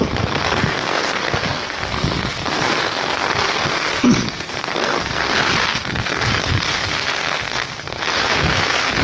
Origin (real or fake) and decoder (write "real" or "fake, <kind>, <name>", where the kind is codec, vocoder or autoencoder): fake, codec, SNAC